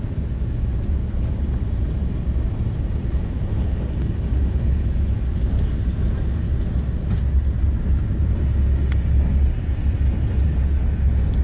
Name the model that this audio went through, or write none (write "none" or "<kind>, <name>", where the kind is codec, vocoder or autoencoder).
none